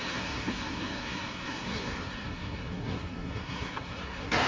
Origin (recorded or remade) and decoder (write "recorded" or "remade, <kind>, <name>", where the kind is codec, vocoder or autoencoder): remade, codec, SNAC